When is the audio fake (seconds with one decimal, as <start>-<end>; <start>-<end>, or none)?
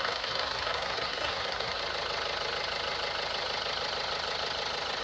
0.0-1.8